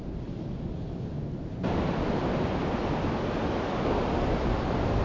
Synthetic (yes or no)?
no